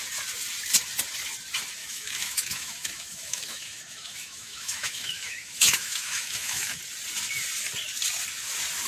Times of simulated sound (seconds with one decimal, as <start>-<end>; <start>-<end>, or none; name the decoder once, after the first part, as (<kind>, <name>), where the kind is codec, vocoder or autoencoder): 1.8-6.8 (autoencoder, DAC-VAE)